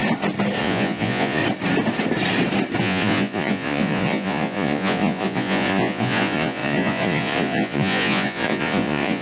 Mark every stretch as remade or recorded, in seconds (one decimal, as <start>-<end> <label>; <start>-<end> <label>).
0.0-0.6 recorded; 0.6-1.4 remade; 1.4-2.8 recorded; 2.8-9.2 remade